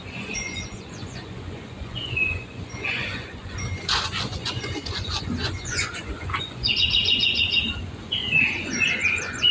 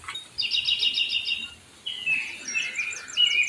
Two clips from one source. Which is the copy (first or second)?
first